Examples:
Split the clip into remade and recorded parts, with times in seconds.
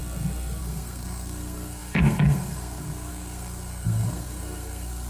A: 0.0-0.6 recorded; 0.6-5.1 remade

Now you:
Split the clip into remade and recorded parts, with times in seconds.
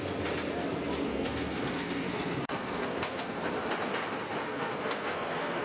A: 0.0-1.1 recorded; 1.1-3.4 remade; 3.4-4.4 recorded; 4.4-5.6 remade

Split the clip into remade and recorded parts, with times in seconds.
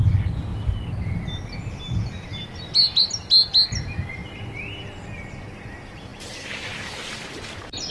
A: 0.0-7.9 recorded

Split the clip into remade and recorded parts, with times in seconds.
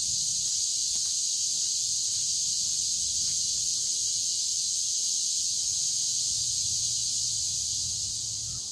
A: 0.0-8.7 recorded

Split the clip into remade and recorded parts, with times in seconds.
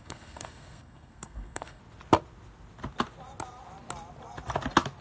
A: 0.0-1.8 remade; 1.8-5.0 recorded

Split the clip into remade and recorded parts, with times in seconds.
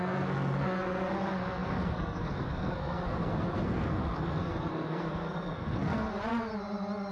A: 0.0-6.1 remade; 6.1-7.1 recorded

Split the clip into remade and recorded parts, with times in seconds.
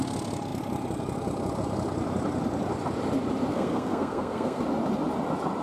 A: 0.0-3.5 recorded; 3.5-4.6 remade; 4.6-5.6 recorded